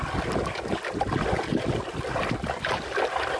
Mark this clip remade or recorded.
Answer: recorded